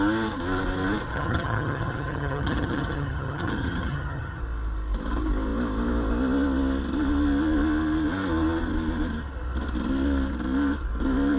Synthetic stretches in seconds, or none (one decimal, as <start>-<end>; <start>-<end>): 1.1-4.4